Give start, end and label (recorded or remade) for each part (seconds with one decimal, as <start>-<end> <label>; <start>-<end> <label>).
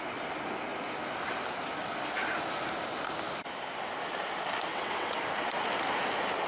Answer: 0.0-4.7 recorded; 4.7-5.2 remade; 5.2-6.5 recorded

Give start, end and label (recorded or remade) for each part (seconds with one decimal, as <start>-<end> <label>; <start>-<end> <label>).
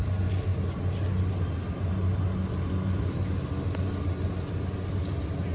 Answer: 0.0-5.5 recorded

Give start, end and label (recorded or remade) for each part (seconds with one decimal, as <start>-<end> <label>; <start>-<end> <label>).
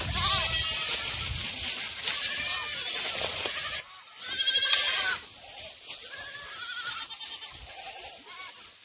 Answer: 0.0-8.8 recorded